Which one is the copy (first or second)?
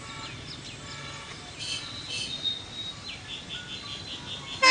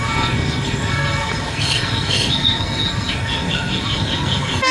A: second